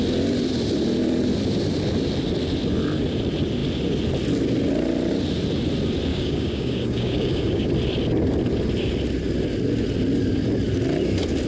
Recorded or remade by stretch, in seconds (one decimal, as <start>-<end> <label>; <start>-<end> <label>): 0.0-6.1 recorded; 6.1-7.7 remade; 7.7-11.5 recorded

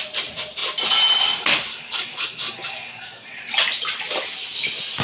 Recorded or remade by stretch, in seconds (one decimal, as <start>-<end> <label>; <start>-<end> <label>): 0.0-1.7 recorded; 1.7-3.4 remade; 3.4-5.0 recorded

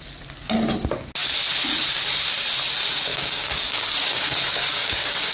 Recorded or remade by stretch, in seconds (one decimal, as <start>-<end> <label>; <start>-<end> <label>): 0.0-3.1 recorded; 3.1-5.3 remade

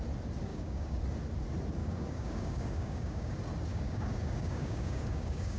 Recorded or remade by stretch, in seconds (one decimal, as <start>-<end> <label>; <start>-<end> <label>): 0.0-0.5 recorded; 0.5-1.0 remade; 1.0-1.8 recorded; 1.8-3.3 remade; 3.3-3.7 recorded; 3.7-5.6 remade

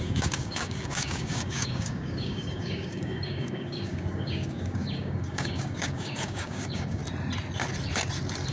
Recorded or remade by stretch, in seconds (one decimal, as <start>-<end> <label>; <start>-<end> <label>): 0.0-7.0 remade; 7.0-8.5 recorded

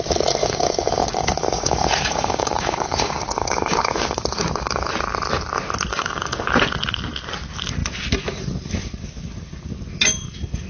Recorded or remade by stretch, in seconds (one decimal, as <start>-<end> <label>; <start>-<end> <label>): 0.0-0.4 recorded; 0.4-4.9 remade; 4.9-5.9 recorded; 5.9-6.5 remade; 6.5-10.7 recorded

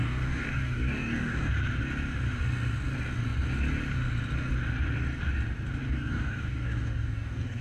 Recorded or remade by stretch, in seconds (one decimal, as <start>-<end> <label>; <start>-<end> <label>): 0.0-1.5 remade; 1.5-5.8 recorded; 5.8-7.6 remade